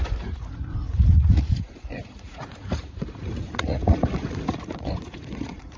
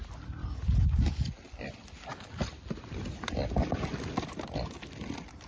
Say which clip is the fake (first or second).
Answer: first